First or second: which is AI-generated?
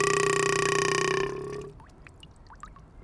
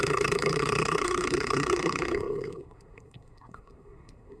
second